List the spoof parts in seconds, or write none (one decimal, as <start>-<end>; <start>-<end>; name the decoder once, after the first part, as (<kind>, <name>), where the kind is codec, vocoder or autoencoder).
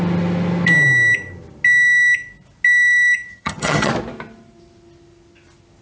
3.3-3.9 (vocoder, HiFi-GAN)